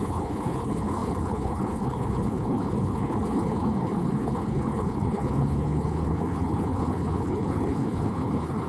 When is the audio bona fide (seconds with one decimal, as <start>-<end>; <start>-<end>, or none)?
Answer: none